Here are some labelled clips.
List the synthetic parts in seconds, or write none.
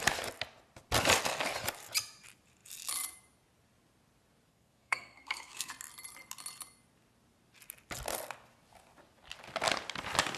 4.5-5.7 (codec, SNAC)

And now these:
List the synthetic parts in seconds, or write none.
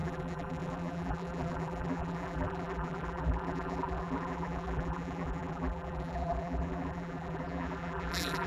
0.0-8.5 (vocoder, BigVGAN v2)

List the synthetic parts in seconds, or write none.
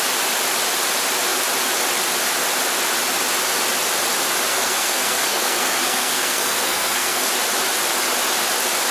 4.5-7.3 (codec, SNAC)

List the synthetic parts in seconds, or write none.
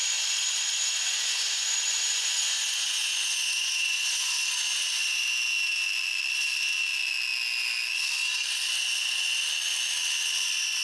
0.0-4.3 (vocoder, Vocos)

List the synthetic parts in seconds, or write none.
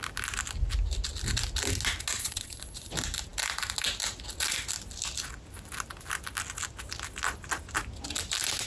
2.2-2.9 (vocoder, Vocos)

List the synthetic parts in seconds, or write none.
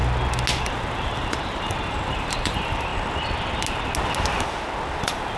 0.6-2.9 (vocoder, BigVGAN v2); 5.0-5.4